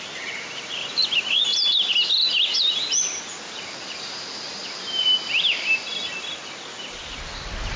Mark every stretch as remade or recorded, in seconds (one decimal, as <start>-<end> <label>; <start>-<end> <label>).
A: 0.0-1.5 remade; 1.5-4.0 recorded; 4.0-4.6 remade; 4.6-6.9 recorded; 6.9-7.8 remade